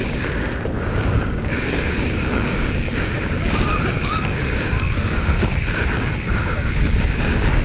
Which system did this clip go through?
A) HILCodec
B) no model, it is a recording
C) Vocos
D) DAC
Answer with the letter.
D